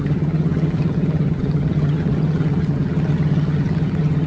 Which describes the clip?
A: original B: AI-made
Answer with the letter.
B